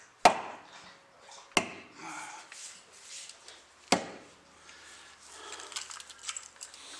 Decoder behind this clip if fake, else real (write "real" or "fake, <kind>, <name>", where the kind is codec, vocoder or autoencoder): real